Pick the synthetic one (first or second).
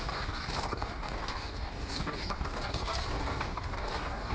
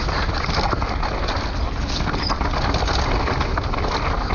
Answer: first